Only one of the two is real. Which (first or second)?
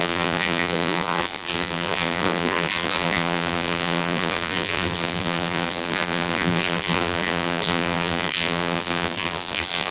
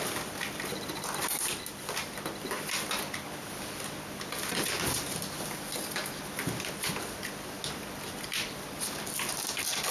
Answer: second